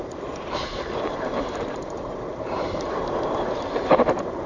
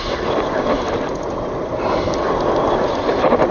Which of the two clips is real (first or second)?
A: second